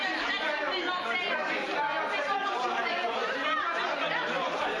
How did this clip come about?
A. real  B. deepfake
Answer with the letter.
A